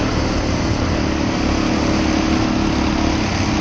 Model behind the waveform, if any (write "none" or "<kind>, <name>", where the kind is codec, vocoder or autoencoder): none